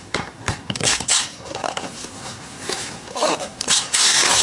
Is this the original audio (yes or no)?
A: no